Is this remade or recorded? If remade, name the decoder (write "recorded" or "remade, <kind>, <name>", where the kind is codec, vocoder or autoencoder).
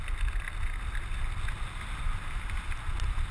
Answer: recorded